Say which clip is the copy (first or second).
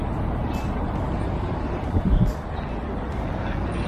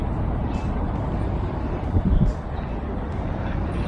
second